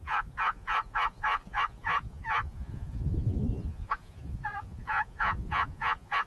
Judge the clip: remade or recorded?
remade